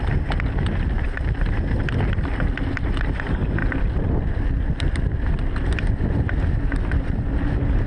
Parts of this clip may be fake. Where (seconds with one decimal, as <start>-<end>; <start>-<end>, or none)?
none